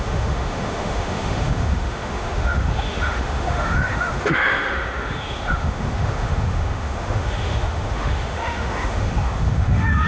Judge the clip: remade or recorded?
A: remade